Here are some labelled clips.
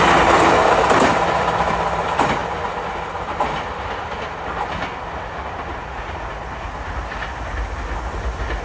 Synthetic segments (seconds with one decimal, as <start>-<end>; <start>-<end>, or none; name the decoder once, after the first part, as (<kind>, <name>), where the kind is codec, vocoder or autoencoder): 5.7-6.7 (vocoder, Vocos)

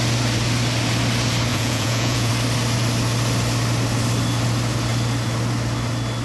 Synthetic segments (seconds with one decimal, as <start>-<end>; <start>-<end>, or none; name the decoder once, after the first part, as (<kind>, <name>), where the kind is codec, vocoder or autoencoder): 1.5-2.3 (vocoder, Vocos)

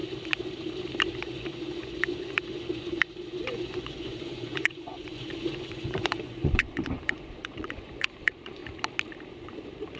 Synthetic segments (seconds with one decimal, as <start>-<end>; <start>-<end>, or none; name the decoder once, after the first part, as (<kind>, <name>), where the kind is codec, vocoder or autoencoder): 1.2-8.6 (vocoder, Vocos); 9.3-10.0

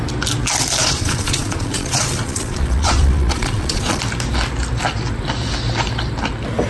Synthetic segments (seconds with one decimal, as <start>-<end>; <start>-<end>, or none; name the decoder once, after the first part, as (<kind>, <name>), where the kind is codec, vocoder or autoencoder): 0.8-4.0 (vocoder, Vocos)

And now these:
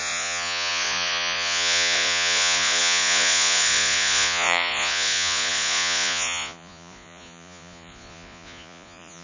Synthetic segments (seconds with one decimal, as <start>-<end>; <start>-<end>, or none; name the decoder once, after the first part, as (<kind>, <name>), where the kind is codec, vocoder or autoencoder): 0.0-9.2 (vocoder, Vocos)

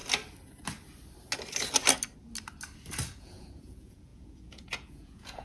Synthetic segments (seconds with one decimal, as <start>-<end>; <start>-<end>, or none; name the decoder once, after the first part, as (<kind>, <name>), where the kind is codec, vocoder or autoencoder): 3.2-5.4 (vocoder, Vocos)